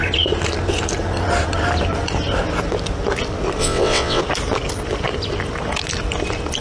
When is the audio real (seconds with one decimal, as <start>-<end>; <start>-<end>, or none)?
0.0-3.6; 4.2-6.6